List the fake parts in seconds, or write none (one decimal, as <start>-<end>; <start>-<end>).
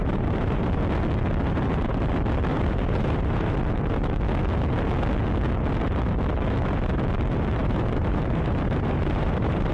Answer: 0.0-0.8; 2.5-3.6; 7.6-9.7